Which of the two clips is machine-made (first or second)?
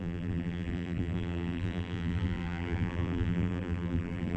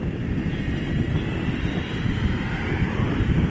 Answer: first